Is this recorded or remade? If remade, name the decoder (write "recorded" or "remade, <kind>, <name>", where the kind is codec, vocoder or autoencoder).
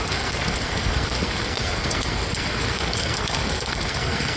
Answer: remade, codec, SNAC